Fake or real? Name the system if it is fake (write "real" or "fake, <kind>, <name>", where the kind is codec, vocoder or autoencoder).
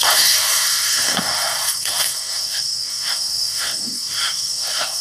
fake, codec, SNAC